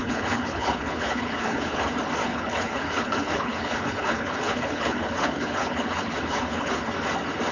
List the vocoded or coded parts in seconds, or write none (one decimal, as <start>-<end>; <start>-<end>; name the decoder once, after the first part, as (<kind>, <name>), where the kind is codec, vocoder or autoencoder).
0.0-1.8 (codec, HILCodec); 2.2-6.7